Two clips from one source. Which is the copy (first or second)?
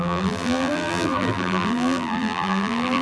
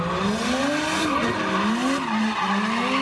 first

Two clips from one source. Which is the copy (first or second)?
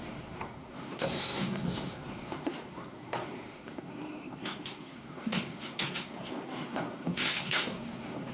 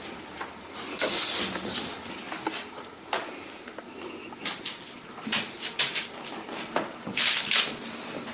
first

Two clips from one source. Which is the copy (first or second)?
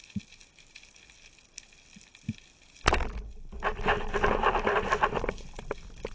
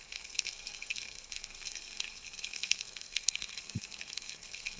second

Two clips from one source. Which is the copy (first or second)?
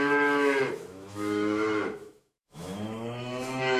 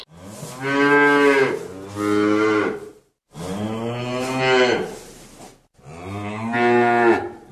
first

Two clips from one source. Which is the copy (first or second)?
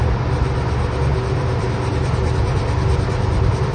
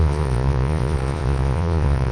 second